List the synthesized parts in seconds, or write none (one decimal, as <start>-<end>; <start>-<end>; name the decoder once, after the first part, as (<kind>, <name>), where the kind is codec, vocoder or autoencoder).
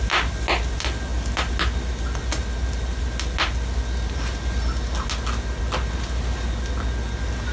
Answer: none